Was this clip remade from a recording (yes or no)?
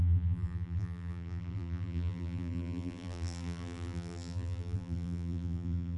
yes